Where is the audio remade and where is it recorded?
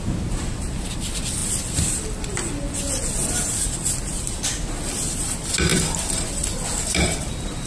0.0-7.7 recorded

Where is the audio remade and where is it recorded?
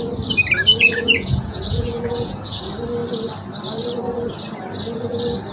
0.0-0.7 recorded; 0.7-2.6 remade; 2.6-5.5 recorded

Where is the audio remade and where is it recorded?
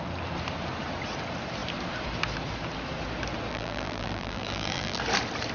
0.0-3.5 recorded; 3.5-5.0 remade; 5.0-5.5 recorded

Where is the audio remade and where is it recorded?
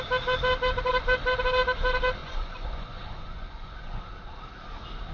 0.0-2.2 recorded; 2.2-4.0 remade; 4.0-5.1 recorded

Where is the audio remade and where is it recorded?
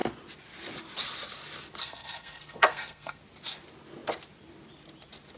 0.0-1.8 recorded; 1.8-3.2 remade; 3.2-5.4 recorded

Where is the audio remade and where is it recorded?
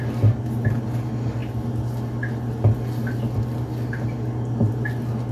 0.0-5.3 recorded